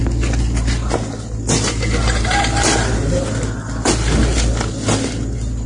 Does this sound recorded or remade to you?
recorded